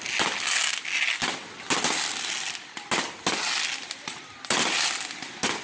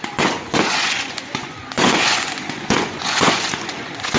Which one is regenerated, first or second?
second